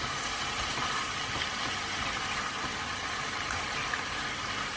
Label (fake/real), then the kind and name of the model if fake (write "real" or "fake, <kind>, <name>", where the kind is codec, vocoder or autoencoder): real